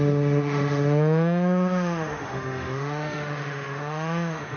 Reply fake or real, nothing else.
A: fake